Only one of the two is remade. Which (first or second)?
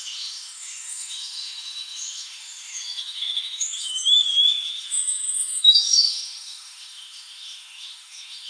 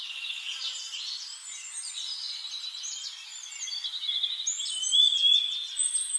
first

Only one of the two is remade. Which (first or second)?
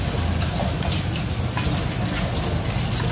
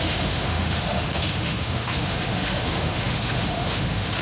second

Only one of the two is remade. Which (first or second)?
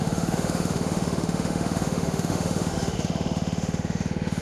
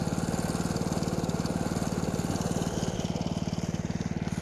first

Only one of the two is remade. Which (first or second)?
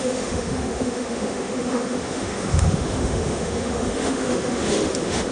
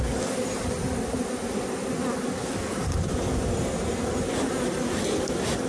first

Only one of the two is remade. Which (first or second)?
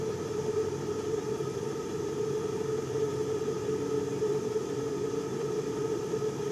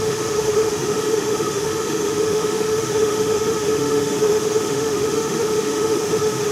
second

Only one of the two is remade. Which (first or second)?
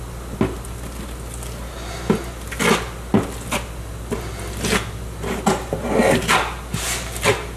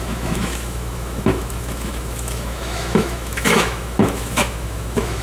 second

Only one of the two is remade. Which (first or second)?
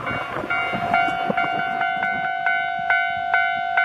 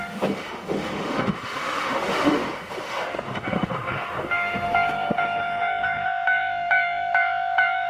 second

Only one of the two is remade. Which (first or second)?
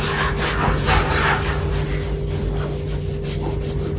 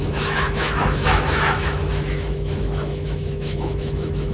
second